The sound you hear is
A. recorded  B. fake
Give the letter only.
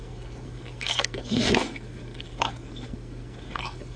B